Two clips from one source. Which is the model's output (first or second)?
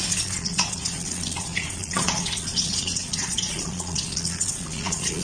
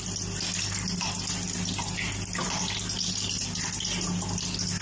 first